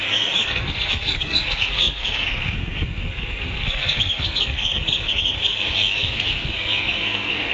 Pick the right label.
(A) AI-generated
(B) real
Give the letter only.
A